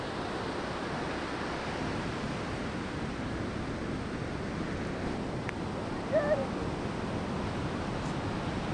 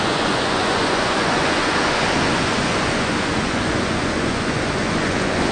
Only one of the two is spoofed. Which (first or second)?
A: second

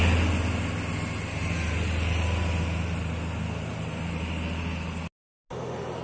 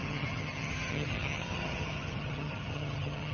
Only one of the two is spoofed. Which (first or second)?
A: second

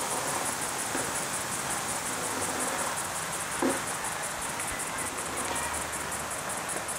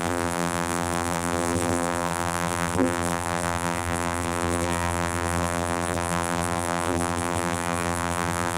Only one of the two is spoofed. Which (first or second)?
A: second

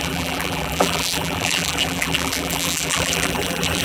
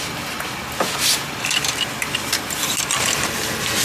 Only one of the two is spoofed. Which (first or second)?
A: first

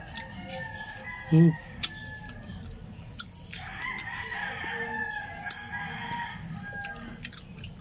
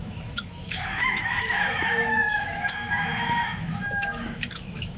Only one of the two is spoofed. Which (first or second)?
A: second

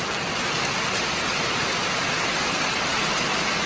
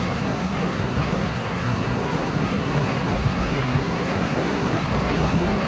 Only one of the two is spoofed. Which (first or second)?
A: second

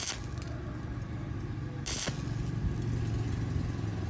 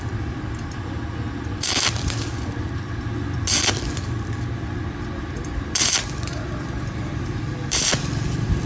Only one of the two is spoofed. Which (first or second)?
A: second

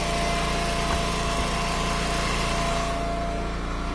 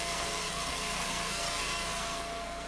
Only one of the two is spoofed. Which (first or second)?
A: second